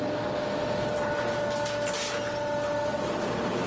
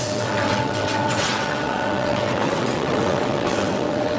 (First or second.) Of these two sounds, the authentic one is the first